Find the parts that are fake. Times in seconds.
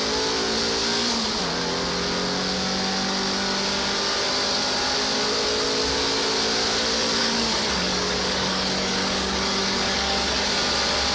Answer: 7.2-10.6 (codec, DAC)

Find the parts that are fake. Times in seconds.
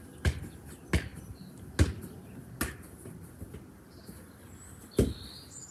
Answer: none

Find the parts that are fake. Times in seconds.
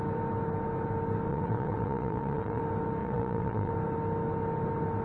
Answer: 1.3-2.6 (vocoder, WaveNeXt); 3.0-3.7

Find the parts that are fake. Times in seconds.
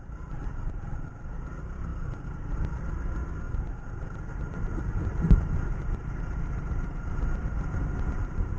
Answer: none